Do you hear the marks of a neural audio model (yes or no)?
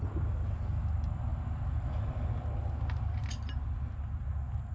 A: no